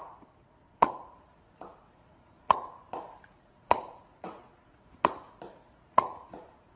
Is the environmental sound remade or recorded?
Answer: remade